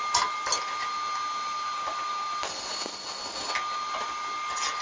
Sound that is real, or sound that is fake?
real